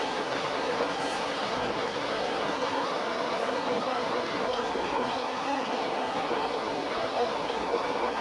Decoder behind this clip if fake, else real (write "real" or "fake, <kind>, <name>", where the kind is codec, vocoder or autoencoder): fake, codec, SNAC